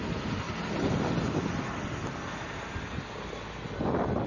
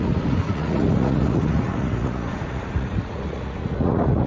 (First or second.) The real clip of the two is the first